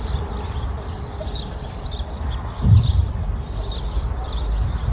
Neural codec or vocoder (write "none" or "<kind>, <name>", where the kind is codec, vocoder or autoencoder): vocoder, BigVGAN v2